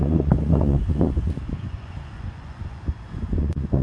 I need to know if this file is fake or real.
fake